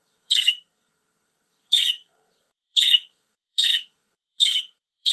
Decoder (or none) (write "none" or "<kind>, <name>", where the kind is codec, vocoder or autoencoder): codec, SNAC